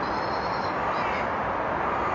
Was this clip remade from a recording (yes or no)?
no